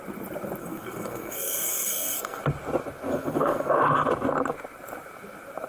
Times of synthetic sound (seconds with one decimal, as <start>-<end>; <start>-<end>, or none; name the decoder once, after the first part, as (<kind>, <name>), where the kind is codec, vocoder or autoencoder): 0.6-2.4 (codec, SNAC); 3.1-3.7